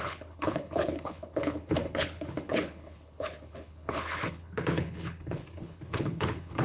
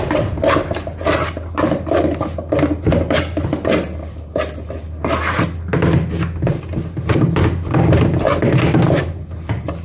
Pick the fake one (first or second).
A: first